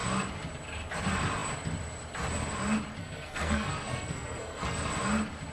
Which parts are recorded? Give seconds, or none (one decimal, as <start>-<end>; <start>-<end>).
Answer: 0.0-3.0; 4.9-5.5